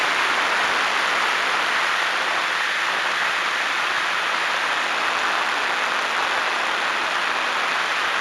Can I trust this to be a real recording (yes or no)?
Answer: yes